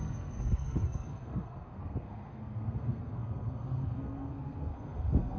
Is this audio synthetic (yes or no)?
yes